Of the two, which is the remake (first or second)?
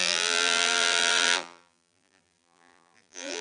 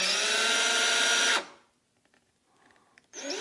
first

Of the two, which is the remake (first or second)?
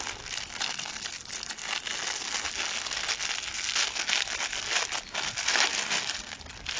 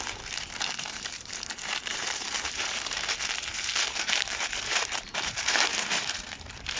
second